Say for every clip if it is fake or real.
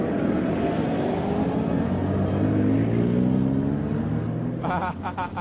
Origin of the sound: real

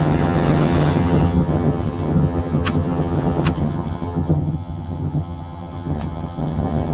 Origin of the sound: fake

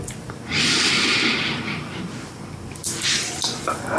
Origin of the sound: real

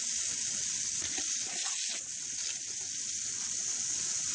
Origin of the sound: real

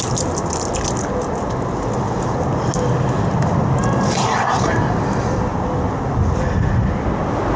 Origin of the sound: real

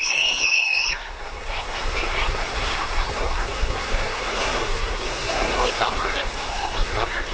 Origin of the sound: fake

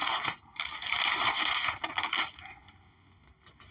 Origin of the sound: real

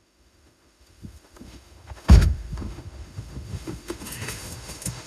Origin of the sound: fake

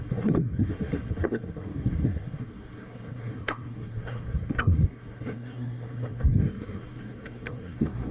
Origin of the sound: fake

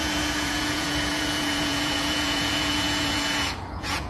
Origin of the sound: fake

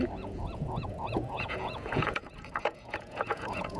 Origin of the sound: fake